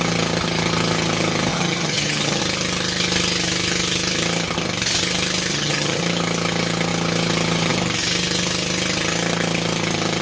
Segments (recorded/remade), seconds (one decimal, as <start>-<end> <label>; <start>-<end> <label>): 0.0-1.5 recorded; 1.5-2.4 remade; 2.4-5.5 recorded; 5.5-6.0 remade; 6.0-10.2 recorded